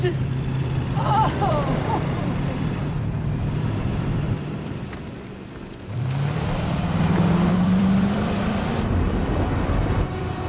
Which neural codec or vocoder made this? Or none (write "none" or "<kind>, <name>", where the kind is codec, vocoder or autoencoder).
vocoder, BigVGAN v2